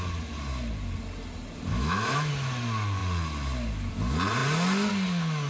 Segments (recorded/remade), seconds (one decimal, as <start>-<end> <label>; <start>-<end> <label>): 0.0-1.7 recorded; 1.7-2.3 remade; 2.3-5.5 recorded